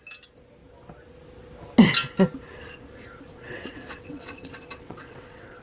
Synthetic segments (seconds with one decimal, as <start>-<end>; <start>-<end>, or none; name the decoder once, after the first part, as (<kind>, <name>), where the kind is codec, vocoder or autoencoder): 3.3-5.6 (vocoder, WaveNeXt)